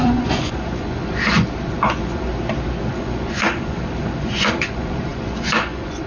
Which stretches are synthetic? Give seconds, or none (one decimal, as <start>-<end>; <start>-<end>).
0.0-2.3; 2.9-6.1

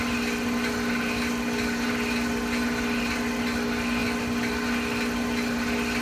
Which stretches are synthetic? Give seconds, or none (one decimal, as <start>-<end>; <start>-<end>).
none

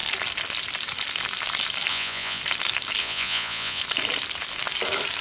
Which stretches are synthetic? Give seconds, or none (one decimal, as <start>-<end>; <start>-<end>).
1.9-2.4; 3.0-3.8

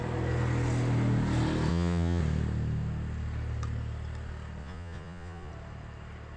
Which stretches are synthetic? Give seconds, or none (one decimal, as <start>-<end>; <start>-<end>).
1.7-2.2; 4.6-5.5

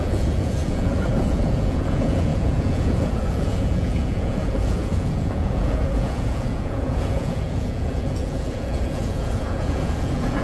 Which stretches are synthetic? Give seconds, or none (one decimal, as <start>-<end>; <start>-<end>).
0.0-10.4

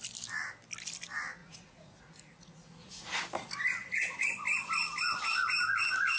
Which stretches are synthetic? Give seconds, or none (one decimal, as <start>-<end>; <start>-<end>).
1.4-3.2; 3.8-4.3